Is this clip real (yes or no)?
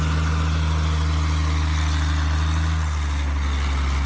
yes